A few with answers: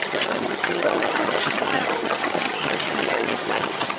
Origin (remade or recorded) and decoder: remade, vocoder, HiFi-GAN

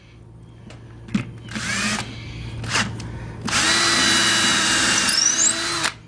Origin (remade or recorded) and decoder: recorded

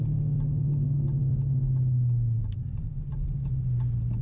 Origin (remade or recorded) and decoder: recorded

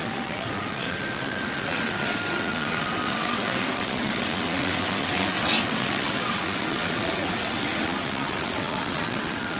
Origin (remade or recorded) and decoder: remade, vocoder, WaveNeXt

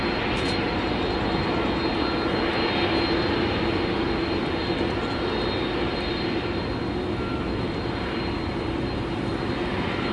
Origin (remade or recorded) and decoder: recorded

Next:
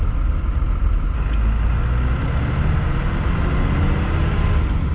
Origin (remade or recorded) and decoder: recorded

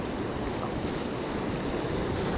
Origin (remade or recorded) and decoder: recorded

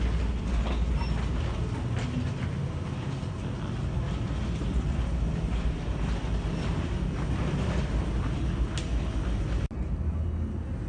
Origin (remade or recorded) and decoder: recorded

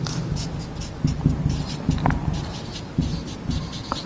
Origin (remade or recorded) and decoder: recorded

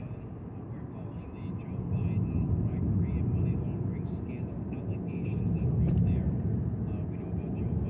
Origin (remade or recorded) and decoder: recorded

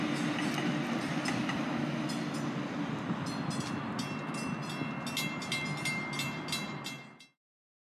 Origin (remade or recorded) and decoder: recorded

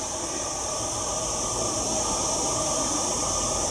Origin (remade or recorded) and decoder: remade, vocoder, BigVGAN v2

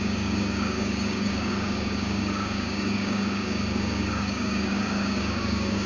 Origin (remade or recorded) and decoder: remade, codec, DAC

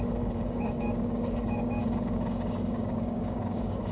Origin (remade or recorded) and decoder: remade, codec, DAC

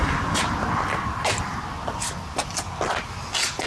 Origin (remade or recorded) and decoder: recorded